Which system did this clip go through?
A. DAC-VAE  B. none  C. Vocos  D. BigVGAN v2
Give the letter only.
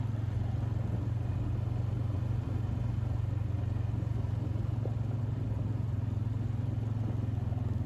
B